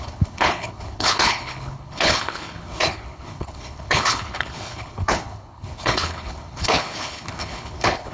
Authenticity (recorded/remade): remade